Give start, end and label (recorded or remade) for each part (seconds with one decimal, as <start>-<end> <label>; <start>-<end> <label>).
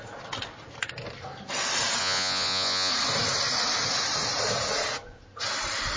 0.0-2.0 recorded; 2.0-2.9 remade; 2.9-6.0 recorded